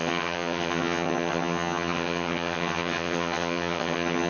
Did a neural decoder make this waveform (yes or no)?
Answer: yes